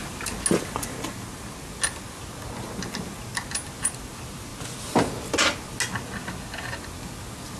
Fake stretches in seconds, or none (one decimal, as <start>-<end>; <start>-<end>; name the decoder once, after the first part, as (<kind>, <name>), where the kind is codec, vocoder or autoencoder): none